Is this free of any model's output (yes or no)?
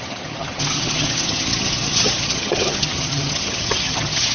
no